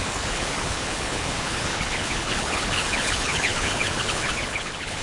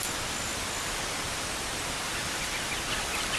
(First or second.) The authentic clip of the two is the second